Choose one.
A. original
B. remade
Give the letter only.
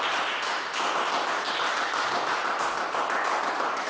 A